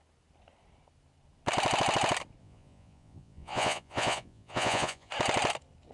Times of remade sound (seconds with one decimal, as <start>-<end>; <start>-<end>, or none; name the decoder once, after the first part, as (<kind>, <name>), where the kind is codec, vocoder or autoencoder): 2.4-5.1 (vocoder, Vocos)